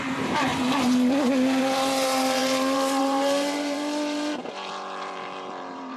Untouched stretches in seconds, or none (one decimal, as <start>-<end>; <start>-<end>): 0.5-1.6